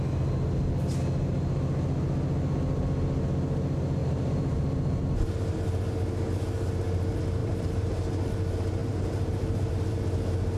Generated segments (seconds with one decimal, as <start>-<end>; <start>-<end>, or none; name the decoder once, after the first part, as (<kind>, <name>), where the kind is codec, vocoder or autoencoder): 4.0-5.0 (vocoder, BigVGAN v2); 7.4-8.1; 8.8-9.7